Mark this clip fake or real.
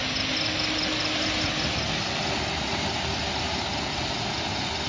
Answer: real